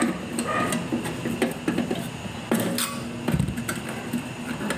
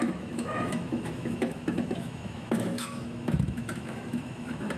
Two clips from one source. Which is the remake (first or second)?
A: second